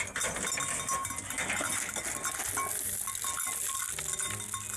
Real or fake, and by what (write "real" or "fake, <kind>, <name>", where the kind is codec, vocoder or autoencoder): real